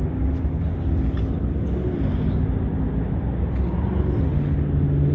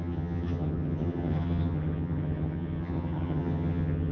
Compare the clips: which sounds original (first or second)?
first